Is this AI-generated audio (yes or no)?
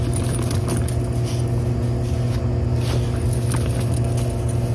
no